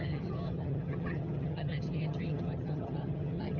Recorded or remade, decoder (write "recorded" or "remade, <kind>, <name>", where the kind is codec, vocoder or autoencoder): remade, vocoder, HiFi-GAN